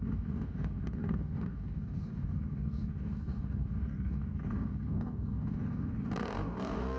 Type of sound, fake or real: fake